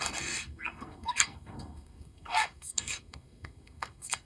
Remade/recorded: remade